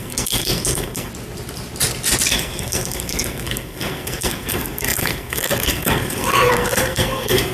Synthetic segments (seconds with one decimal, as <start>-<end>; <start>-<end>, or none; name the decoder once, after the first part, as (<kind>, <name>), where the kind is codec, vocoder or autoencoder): 0.0-1.1 (codec, SNAC); 2.3-7.5